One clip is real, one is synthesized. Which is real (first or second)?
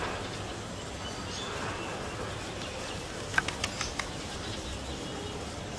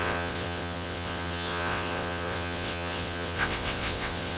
first